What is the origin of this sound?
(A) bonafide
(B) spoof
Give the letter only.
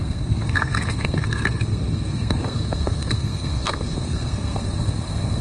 B